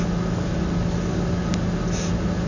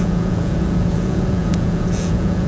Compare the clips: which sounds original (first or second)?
first